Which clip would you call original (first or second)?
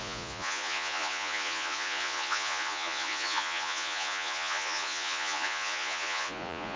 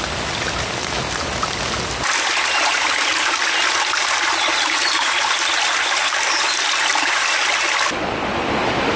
second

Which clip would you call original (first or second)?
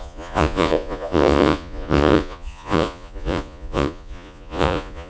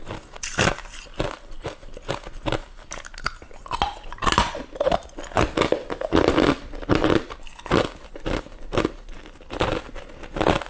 second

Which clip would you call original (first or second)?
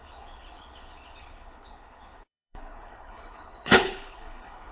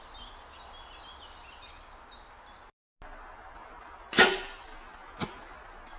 second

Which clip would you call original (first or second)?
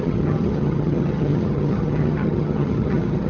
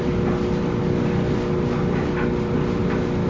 second